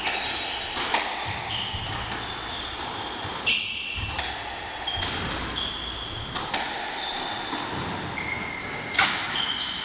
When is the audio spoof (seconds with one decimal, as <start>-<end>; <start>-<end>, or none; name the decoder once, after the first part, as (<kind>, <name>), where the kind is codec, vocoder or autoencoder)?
8.6-9.4 (codec, DAC)